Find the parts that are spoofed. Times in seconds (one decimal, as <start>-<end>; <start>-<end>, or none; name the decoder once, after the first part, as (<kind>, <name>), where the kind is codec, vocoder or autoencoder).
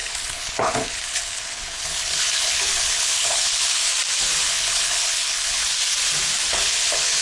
0.0-3.9 (codec, HILCodec); 4.5-5.6; 6.5-7.2